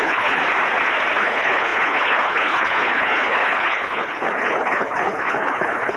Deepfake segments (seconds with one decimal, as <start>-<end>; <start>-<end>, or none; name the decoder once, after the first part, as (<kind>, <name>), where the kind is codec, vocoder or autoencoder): 0.0-0.4 (codec, HILCodec); 1.2-6.0